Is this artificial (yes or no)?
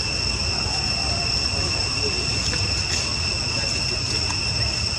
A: no